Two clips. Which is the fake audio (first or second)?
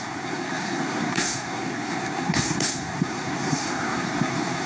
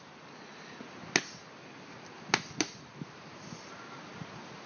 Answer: first